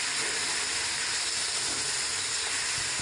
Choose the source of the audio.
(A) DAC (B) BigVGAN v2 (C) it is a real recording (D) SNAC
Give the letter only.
C